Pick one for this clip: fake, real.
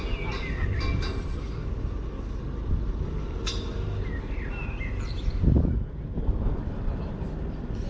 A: real